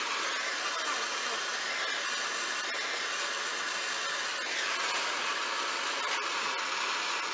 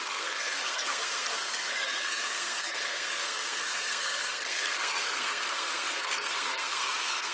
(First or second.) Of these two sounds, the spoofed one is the second